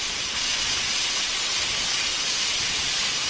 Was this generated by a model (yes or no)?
yes